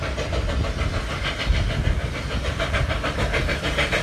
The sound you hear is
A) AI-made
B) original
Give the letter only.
B